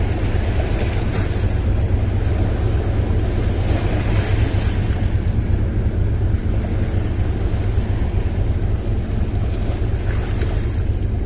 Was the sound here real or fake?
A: real